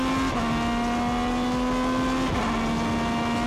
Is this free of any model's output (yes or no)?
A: yes